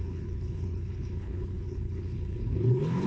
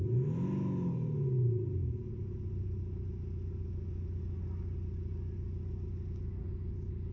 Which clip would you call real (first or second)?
second